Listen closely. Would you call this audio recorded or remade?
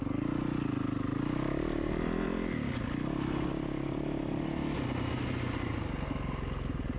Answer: recorded